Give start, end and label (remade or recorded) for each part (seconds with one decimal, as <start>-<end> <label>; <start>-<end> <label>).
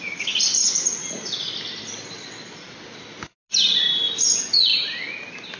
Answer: 0.0-5.6 recorded